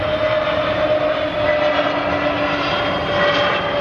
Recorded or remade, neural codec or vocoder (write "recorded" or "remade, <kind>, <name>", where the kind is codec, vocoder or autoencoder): recorded